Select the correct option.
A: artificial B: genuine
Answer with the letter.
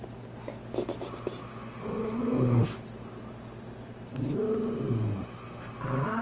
B